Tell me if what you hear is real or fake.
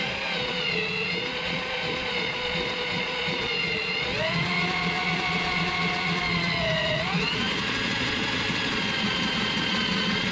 fake